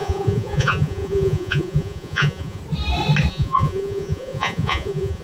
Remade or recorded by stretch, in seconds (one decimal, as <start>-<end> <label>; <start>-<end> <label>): 0.0-2.6 remade; 2.6-3.3 recorded; 3.3-5.2 remade